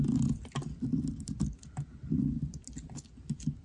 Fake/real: real